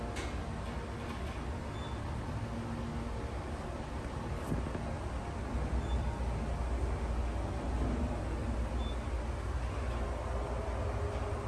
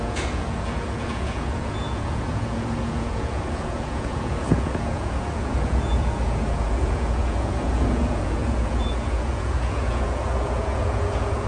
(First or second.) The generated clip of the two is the second